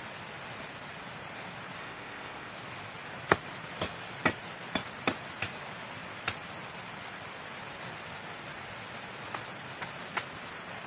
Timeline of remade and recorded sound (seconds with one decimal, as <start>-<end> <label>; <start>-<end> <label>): 0.0-1.8 recorded; 1.8-2.5 remade; 2.5-10.9 recorded